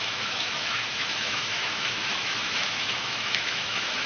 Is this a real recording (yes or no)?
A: no